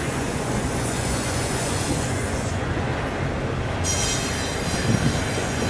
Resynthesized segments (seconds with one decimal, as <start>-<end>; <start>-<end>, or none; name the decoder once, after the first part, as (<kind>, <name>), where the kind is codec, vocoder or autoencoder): 0.0-2.9 (vocoder, Vocos); 5.3-5.7